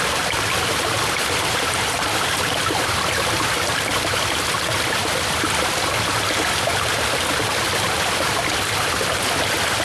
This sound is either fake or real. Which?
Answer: real